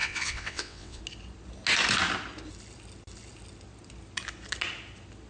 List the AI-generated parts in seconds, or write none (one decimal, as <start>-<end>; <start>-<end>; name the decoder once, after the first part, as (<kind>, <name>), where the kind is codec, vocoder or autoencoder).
0.0-1.0 (vocoder, WaveNeXt)